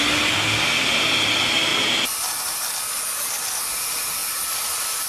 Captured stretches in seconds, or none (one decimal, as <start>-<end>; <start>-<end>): 0.0-5.1